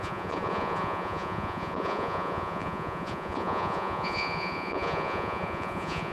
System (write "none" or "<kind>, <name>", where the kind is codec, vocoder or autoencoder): vocoder, Vocos